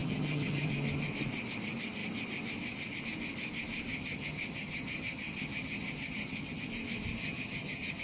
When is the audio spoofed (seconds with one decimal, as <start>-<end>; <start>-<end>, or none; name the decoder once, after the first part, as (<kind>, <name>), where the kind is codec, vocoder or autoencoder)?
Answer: 0.0-0.7 (vocoder, HiFi-GAN); 3.9-6.7; 7.2-8.0